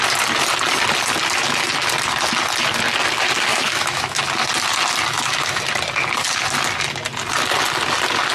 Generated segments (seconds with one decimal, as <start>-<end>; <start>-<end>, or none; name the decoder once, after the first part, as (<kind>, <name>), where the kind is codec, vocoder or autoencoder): 3.5-4.2 (autoencoder, DAC-VAE); 5.1-5.6